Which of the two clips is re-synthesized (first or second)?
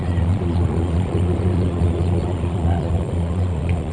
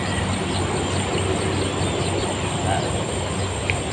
first